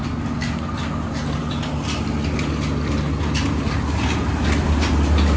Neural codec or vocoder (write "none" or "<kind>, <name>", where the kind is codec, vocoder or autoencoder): none